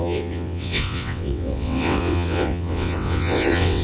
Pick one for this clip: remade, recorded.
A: remade